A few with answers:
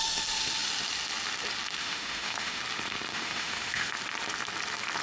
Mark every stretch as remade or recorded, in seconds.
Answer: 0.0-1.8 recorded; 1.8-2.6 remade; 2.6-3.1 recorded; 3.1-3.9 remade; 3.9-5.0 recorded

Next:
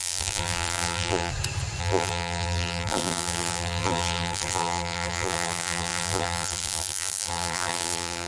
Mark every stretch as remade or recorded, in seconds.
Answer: 0.0-1.3 remade; 1.3-1.8 recorded; 1.8-8.3 remade

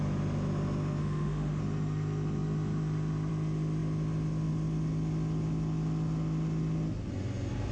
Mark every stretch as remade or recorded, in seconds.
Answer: 0.0-1.0 recorded; 1.0-1.6 remade; 1.6-7.7 recorded

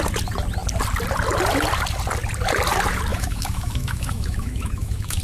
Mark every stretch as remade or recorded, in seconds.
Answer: 0.0-3.1 recorded; 3.1-5.2 remade